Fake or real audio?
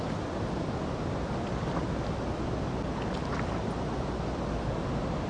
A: real